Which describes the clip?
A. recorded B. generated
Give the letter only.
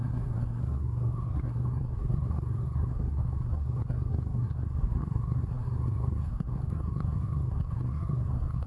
B